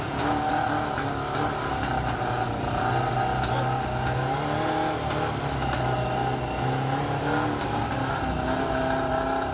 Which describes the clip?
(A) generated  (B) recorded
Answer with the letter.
B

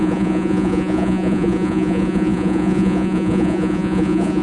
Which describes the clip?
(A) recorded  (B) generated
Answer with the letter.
B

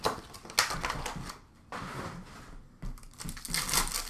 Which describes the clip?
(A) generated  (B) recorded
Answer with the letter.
B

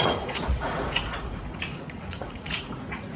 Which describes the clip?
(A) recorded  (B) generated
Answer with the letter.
B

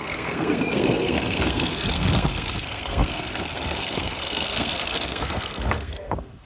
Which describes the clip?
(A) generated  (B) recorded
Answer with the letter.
A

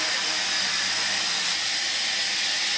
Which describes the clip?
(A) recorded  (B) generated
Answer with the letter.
A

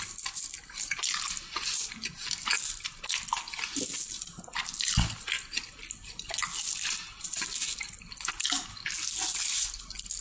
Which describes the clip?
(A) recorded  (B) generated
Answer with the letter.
A